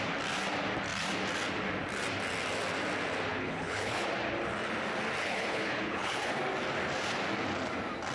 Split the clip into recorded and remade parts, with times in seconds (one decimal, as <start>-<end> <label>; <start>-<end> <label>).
0.0-3.3 recorded; 3.3-4.1 remade; 4.1-5.2 recorded; 5.2-6.4 remade; 6.4-8.1 recorded